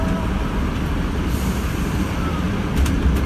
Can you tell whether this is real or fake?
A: fake